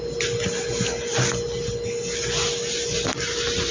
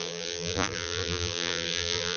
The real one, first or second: first